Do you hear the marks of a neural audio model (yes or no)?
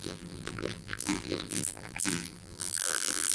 yes